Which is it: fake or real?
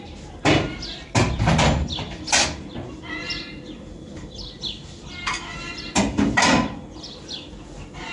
real